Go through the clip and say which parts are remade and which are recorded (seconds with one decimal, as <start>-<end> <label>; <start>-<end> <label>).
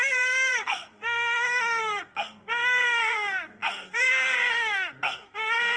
0.0-5.8 remade